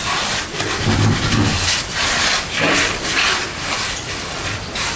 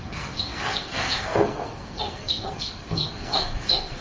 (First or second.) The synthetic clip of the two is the second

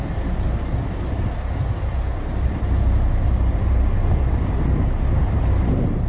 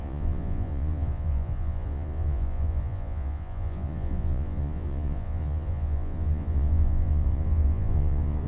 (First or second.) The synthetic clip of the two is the second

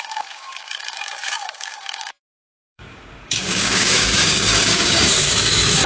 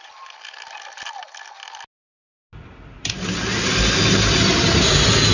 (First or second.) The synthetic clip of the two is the first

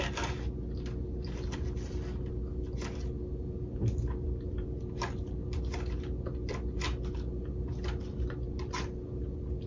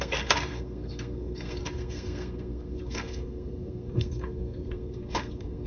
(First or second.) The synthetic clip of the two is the second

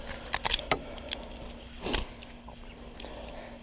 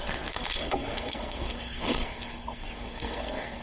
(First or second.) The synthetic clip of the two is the second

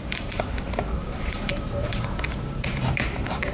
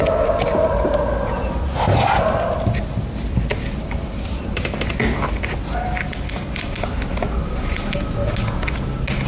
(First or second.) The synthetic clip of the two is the first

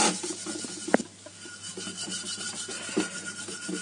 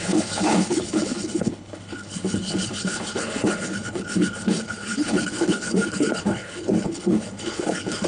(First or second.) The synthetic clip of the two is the second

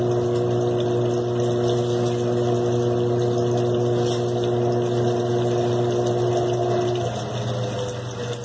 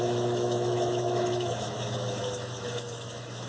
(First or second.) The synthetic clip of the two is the second